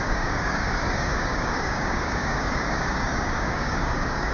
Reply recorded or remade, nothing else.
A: remade